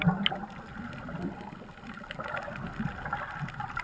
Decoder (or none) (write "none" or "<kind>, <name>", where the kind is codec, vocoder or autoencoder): none